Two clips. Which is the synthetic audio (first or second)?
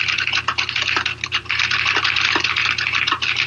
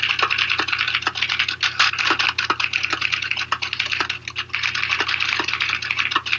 first